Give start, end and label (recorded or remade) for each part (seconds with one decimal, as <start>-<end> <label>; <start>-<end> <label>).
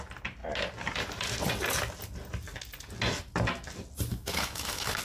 0.0-4.1 recorded; 4.1-5.0 remade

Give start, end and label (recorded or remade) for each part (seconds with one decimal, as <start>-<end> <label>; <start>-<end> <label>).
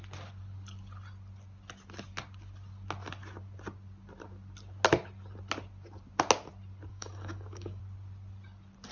0.0-6.9 recorded; 6.9-7.8 remade; 7.8-8.9 recorded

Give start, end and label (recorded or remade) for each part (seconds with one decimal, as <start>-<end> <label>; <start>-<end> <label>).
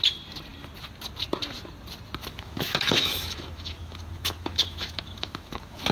0.0-2.2 recorded; 2.2-5.9 remade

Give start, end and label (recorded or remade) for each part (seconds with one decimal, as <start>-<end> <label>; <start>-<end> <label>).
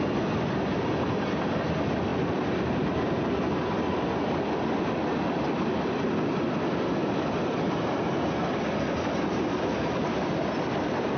0.0-11.2 recorded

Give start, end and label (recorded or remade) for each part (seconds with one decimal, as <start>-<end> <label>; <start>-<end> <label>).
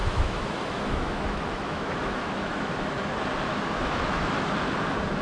0.0-3.1 remade; 3.1-3.5 recorded; 3.5-4.5 remade; 4.5-5.2 recorded